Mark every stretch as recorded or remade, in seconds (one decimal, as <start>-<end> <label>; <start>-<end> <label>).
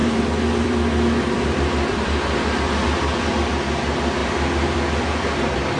0.0-3.5 remade; 3.5-4.2 recorded; 4.2-5.8 remade